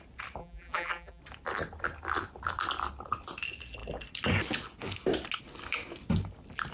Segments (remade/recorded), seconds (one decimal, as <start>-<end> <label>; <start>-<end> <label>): 0.0-0.4 recorded; 0.4-1.2 remade; 1.2-6.7 recorded